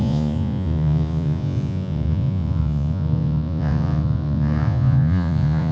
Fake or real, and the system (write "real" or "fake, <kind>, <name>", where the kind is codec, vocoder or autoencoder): fake, vocoder, Vocos